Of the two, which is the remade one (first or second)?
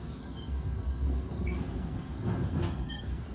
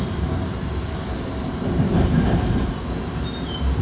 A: first